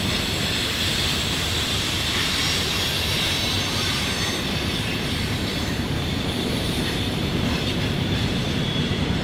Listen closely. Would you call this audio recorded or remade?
remade